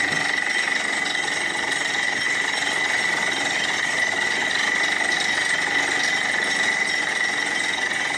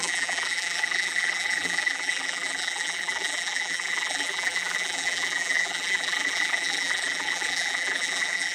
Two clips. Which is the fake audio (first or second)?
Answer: second